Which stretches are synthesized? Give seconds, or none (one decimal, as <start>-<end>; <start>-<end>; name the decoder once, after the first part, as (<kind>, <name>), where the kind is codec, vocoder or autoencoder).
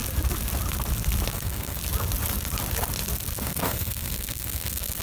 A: 1.3-1.8 (codec, SNAC); 3.4-5.0